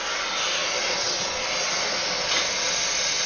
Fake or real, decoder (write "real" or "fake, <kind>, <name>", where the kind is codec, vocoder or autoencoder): real